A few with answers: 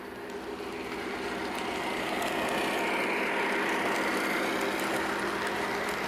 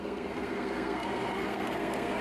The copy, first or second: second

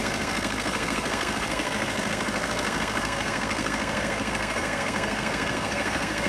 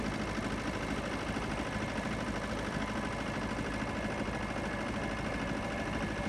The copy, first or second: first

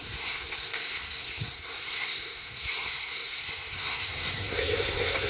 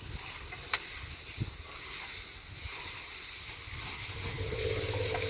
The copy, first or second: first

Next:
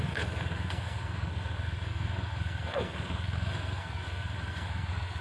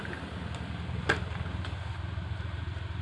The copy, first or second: first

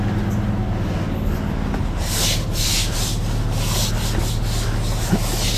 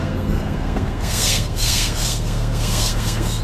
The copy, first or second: second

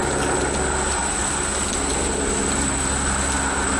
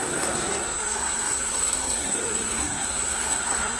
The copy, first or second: second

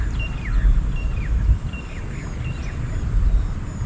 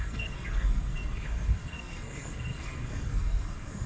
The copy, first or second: second